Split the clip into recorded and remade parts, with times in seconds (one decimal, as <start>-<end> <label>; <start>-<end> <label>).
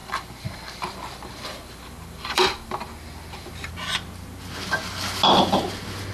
0.0-3.7 remade; 3.7-6.1 recorded